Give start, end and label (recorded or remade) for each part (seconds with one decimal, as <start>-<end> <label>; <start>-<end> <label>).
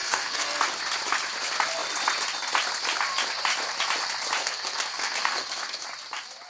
0.0-0.6 remade; 0.6-4.4 recorded; 4.4-5.8 remade; 5.8-6.5 recorded